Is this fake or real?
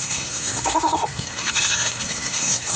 fake